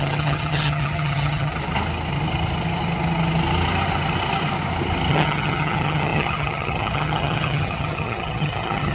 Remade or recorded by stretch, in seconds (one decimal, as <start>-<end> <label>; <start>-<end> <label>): 0.0-1.5 remade; 1.5-5.1 recorded; 5.1-8.9 remade